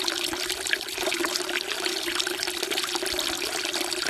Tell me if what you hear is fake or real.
real